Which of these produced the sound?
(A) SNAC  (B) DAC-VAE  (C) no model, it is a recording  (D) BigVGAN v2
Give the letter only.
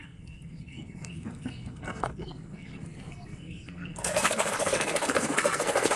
A